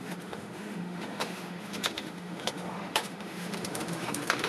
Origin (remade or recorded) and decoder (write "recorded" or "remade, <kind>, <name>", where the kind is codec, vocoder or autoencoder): remade, autoencoder, DAC-VAE